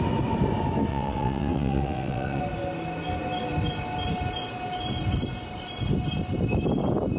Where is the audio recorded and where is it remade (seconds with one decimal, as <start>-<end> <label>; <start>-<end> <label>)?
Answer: 0.0-0.9 recorded; 0.9-2.4 remade; 2.4-7.2 recorded